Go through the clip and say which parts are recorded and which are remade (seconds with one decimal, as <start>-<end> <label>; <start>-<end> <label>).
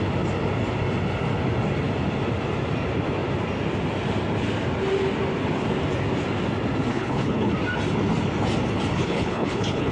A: 0.0-6.9 recorded; 6.9-7.5 remade; 7.5-8.9 recorded; 8.9-9.9 remade